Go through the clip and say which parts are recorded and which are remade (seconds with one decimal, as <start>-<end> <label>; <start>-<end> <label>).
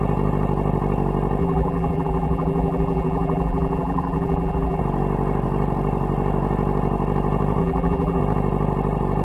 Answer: 0.0-1.4 recorded; 1.4-4.8 remade; 4.8-7.6 recorded; 7.6-8.2 remade; 8.2-9.2 recorded